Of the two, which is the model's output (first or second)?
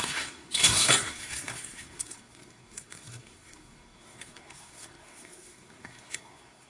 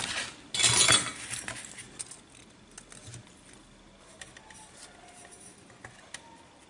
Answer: first